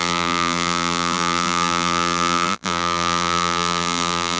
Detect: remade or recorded remade